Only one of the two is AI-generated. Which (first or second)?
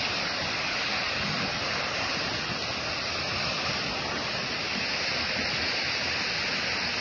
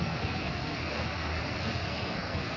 second